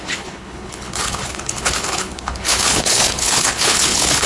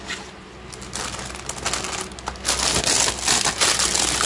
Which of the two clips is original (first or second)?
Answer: second